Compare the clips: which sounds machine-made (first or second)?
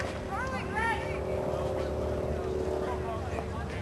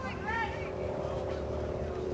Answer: second